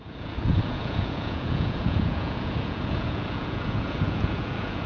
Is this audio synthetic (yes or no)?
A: yes